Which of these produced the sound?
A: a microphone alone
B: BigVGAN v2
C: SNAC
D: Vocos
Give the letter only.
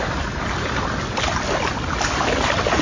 A